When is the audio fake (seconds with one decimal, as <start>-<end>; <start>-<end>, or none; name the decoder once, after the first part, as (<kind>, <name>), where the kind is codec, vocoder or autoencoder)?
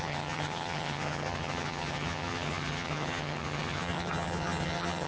0.0-5.1 (vocoder, HiFi-GAN)